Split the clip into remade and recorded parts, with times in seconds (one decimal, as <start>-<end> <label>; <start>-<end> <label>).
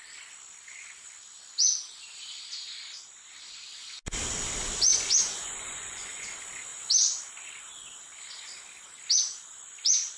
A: 0.0-4.9 recorded; 4.9-6.3 remade; 6.3-10.2 recorded